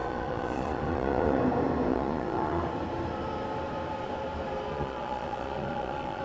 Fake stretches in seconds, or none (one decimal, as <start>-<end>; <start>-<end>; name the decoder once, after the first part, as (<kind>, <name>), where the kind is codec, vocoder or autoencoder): 0.0-1.4 (vocoder, Vocos); 1.9-2.6; 4.7-6.2